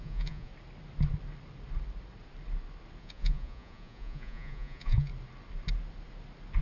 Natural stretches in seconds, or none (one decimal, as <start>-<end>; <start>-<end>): 0.5-3.0; 5.1-6.6